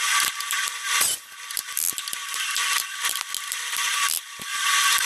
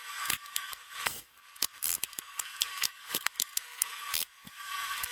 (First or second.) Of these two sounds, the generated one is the second